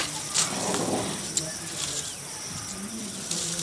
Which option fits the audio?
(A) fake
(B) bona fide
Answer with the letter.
B